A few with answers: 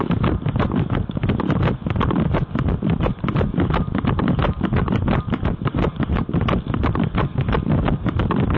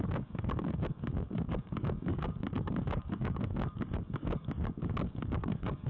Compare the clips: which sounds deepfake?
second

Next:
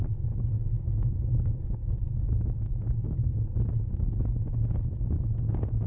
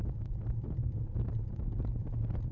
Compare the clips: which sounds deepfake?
second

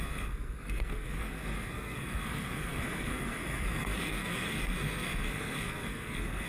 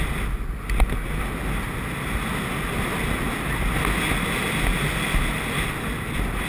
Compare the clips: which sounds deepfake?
first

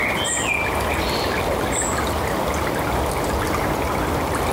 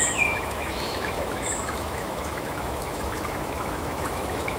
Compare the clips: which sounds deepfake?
second